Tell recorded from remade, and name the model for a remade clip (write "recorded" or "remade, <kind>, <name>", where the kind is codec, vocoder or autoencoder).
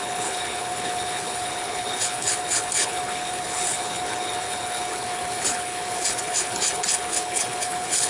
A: remade, codec, HILCodec